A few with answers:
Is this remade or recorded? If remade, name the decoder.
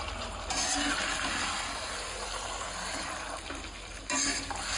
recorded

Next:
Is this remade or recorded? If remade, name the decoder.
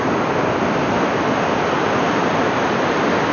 recorded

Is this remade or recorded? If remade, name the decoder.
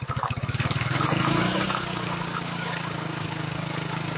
remade, codec, DAC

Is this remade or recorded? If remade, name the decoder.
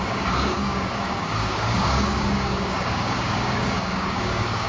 remade, codec, DAC